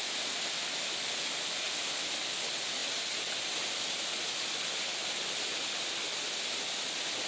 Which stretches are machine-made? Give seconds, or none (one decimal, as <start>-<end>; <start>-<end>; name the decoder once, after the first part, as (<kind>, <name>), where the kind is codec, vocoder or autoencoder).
none